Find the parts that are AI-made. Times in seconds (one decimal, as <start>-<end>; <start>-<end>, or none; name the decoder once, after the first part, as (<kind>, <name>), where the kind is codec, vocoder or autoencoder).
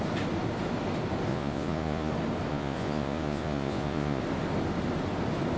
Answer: 1.3-2.1 (vocoder, Vocos); 2.5-4.2